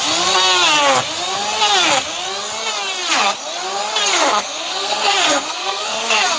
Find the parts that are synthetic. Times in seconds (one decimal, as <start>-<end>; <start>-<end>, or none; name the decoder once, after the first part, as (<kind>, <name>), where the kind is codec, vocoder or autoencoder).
4.1-6.4 (codec, SNAC)